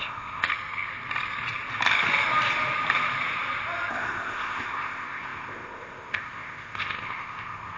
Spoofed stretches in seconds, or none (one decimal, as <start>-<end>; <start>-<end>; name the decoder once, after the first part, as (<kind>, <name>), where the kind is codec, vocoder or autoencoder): 0.0-0.5 (codec, ZipCodec); 3.9-7.8

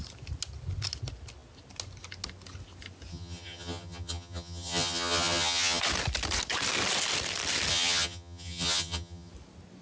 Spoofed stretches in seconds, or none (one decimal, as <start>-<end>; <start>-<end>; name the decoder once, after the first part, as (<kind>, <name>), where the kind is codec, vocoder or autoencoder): 3.1-5.8 (vocoder, HiFi-GAN); 7.7-9.3